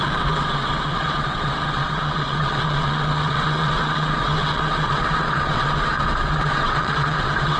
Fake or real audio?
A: fake